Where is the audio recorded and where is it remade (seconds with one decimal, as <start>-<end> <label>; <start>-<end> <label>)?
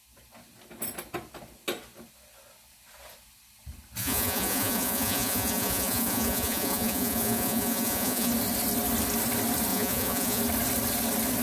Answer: 0.0-4.0 recorded; 4.0-8.3 remade; 8.3-9.7 recorded; 9.7-10.4 remade; 10.4-11.4 recorded